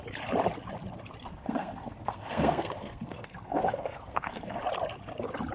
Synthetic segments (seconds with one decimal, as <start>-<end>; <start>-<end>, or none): 1.3-4.6